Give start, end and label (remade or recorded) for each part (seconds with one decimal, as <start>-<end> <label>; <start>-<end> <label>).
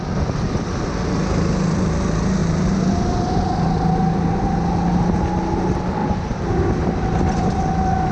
0.0-2.4 recorded; 2.4-3.3 remade; 3.3-8.1 recorded